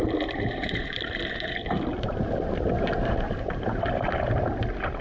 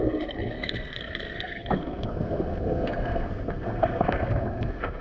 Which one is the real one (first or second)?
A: first